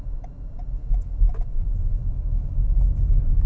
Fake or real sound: real